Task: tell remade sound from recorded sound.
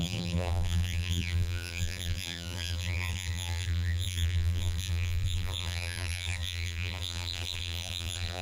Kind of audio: remade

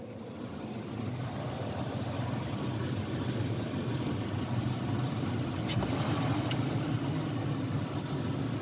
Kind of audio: recorded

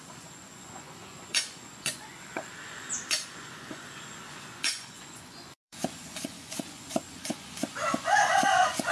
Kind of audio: remade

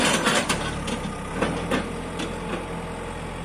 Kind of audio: recorded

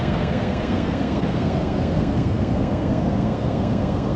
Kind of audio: remade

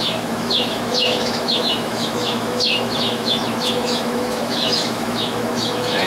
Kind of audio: remade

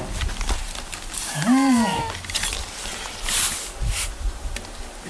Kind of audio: recorded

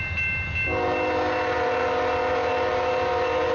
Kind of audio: recorded